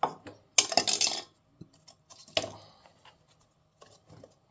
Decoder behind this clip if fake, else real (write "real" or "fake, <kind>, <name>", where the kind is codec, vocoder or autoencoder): real